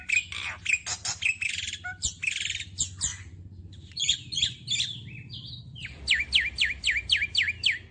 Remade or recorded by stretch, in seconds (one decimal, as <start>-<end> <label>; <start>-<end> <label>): 0.0-3.1 recorded; 3.1-4.4 remade; 4.4-7.9 recorded